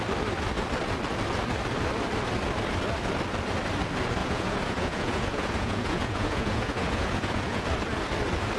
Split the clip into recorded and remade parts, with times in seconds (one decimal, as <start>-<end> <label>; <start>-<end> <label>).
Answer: 0.0-4.2 recorded; 4.2-7.6 remade; 7.6-8.6 recorded